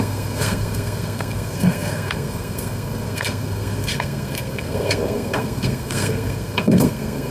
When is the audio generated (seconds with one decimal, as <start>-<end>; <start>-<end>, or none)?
0.0-7.3